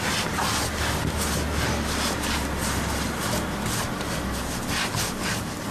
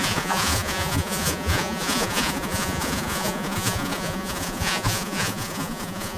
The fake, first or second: second